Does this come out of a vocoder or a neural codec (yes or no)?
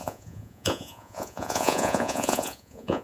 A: yes